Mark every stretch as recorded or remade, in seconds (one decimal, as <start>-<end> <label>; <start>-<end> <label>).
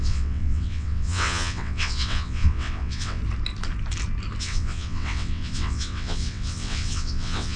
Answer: 0.0-3.2 remade; 3.2-4.4 recorded; 4.4-7.6 remade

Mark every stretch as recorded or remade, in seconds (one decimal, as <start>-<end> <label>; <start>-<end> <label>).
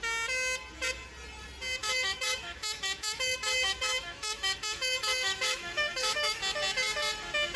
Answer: 0.0-1.8 recorded; 1.8-6.4 remade; 6.4-7.6 recorded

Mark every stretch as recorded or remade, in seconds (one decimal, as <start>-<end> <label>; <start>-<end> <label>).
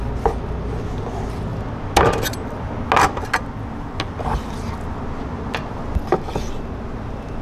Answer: 0.0-7.4 recorded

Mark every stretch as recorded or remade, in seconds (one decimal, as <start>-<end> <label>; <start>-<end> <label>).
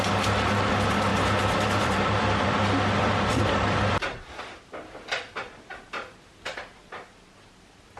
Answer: 0.0-1.1 recorded; 1.1-5.6 remade; 5.6-8.0 recorded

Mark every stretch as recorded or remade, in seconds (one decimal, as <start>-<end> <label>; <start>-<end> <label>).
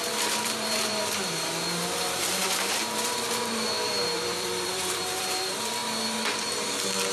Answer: 0.0-5.8 remade; 5.8-7.1 recorded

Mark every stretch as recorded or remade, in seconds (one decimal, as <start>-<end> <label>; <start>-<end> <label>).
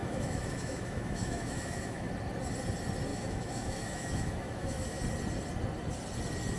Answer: 0.0-2.1 remade; 2.1-3.1 recorded; 3.1-5.0 remade; 5.0-6.6 recorded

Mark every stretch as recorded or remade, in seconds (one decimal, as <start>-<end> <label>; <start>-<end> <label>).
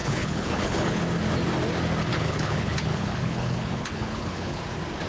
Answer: 0.0-1.0 remade; 1.0-2.1 recorded; 2.1-4.6 remade; 4.6-5.1 recorded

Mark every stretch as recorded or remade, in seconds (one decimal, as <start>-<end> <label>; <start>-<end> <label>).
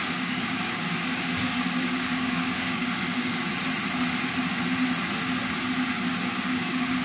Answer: 0.0-3.5 remade; 3.5-6.3 recorded; 6.3-7.0 remade